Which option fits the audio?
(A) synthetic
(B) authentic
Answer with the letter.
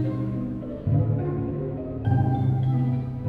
A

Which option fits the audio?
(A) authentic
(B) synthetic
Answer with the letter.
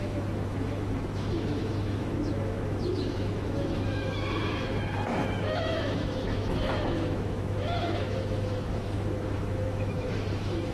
B